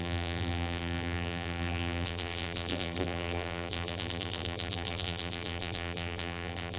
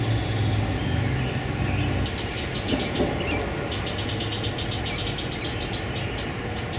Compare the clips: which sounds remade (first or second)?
first